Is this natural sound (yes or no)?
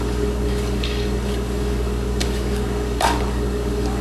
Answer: no